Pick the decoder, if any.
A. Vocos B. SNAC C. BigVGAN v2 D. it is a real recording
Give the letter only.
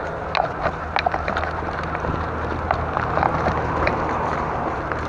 D